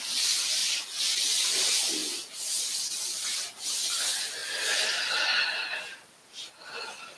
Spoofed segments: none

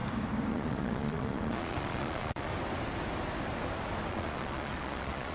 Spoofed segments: 0.5-2.5 (vocoder, Vocos); 4.1-5.3

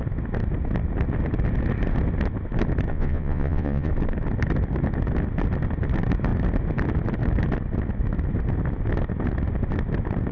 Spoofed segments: 2.9-3.9 (vocoder, Vocos)

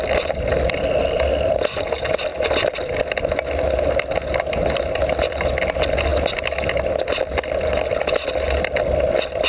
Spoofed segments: none

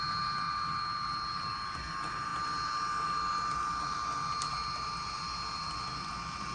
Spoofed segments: none